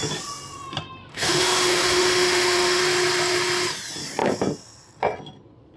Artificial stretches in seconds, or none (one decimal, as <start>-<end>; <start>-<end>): 1.1-2.8